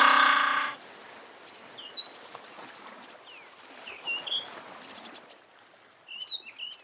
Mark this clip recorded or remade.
recorded